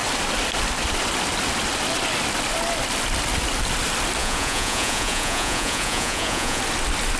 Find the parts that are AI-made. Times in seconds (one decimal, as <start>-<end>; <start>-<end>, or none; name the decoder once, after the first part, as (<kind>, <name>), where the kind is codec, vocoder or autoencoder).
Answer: 4.2-6.6 (vocoder, Vocos)